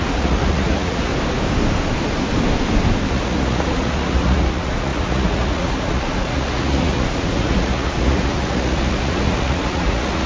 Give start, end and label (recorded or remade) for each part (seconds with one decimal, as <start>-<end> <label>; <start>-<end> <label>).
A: 0.0-1.1 remade; 1.1-3.1 recorded; 3.1-10.3 remade